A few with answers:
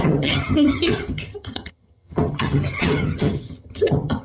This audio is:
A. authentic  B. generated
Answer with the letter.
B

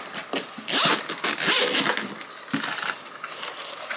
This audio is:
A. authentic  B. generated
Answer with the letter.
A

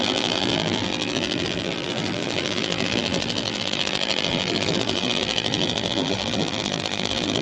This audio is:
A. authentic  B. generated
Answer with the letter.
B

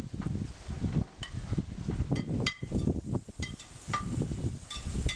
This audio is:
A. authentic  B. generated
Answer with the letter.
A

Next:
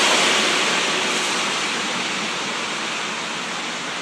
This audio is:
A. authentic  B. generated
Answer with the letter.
A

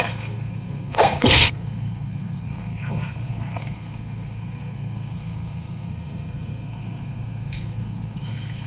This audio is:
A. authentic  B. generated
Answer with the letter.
B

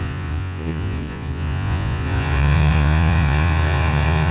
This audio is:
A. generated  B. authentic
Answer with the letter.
A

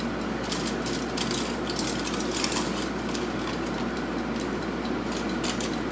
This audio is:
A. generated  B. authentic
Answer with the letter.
B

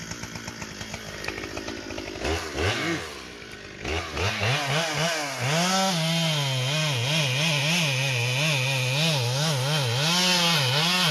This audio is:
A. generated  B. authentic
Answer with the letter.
B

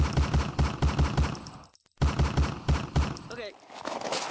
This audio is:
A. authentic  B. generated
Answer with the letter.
A